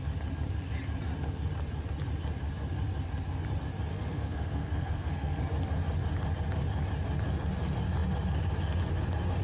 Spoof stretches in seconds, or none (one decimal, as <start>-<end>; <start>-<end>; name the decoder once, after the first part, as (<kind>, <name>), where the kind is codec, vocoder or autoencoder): 3.9-5.4 (codec, SNAC)